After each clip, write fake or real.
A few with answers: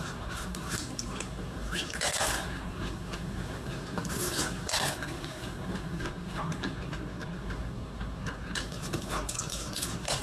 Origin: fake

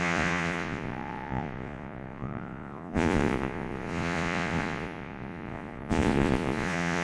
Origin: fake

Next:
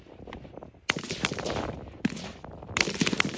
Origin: fake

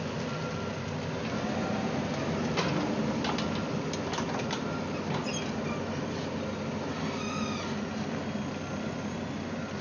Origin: real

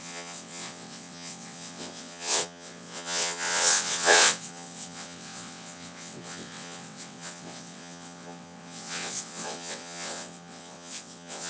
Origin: fake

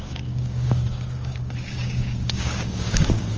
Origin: fake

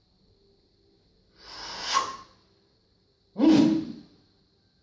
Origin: real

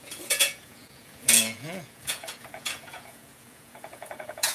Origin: fake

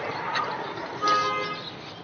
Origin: real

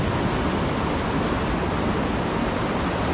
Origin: real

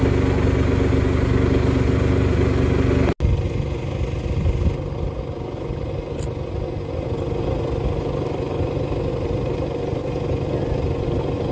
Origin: real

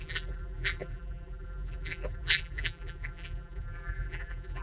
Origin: fake